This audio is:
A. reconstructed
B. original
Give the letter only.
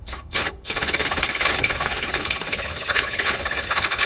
A